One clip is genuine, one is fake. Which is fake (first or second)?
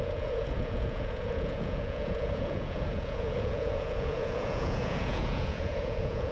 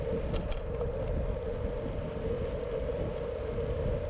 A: first